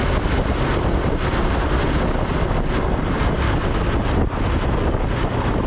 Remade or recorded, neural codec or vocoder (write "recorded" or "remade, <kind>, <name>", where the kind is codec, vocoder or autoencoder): recorded